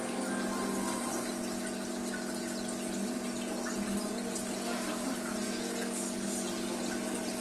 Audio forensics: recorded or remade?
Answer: recorded